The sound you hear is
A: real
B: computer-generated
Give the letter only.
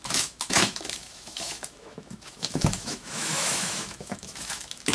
B